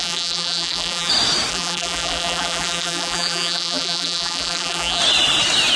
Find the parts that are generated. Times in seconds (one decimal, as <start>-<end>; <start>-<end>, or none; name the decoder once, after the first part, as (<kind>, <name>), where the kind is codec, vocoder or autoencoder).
0.0-1.1 (vocoder, BigVGAN v2); 1.5-5.0